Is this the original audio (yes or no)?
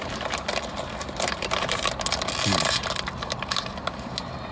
yes